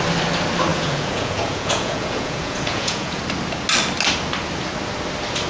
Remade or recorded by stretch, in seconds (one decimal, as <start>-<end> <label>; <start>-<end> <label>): 0.0-0.7 recorded; 0.7-3.2 remade; 3.2-5.5 recorded